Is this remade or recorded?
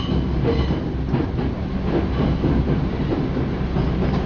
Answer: recorded